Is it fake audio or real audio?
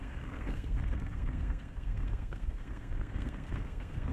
fake